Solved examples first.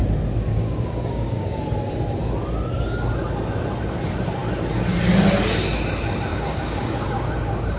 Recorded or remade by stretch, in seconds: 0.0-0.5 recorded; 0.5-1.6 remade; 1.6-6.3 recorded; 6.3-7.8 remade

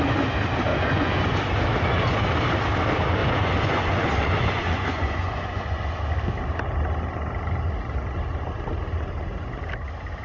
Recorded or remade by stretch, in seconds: 0.0-0.7 recorded; 0.7-1.4 remade; 1.4-3.2 recorded; 3.2-6.0 remade; 6.0-10.2 recorded

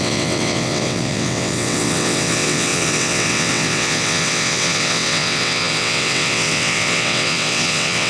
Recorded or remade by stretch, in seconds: 0.0-8.1 remade

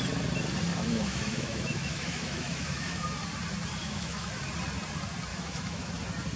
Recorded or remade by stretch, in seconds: 0.0-0.7 recorded; 0.7-3.0 remade; 3.0-3.8 recorded; 3.8-4.3 remade; 4.3-5.3 recorded; 5.3-5.9 remade; 5.9-6.4 recorded

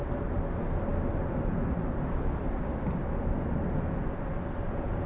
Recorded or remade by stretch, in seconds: 0.0-5.1 recorded

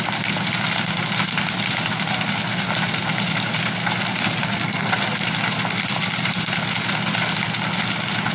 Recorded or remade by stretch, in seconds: 0.0-4.4 recorded; 4.4-4.9 remade; 4.9-8.3 recorded